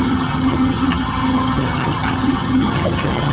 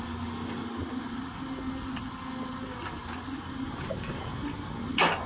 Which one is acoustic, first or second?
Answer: second